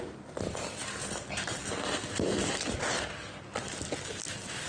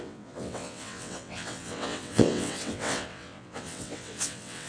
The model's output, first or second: second